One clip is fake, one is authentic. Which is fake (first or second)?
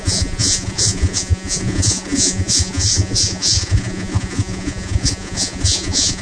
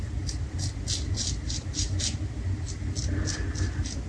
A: first